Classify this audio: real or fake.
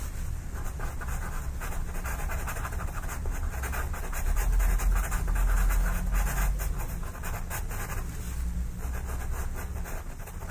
real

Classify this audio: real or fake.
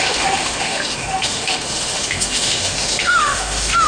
fake